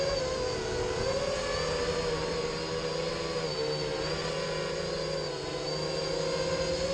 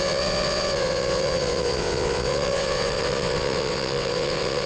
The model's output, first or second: second